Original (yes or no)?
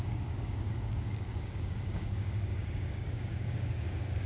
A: no